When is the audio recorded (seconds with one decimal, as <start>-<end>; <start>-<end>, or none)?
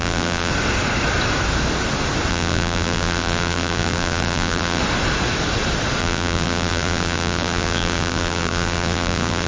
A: 0.5-2.3; 4.8-6.0